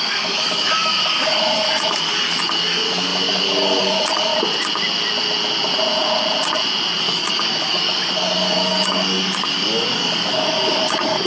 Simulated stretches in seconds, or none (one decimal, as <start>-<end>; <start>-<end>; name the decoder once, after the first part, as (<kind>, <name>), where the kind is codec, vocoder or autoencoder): 0.0-4.3 (codec, DAC); 7.0-11.3